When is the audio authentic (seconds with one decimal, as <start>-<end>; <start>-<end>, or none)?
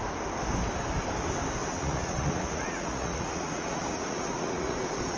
0.0-1.7; 4.8-5.2